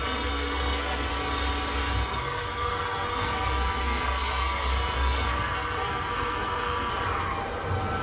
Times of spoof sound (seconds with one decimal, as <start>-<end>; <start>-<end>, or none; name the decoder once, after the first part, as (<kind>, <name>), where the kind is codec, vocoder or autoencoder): 0.0-1.1 (codec, SNAC); 2.1-6.9